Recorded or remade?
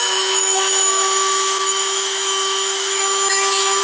remade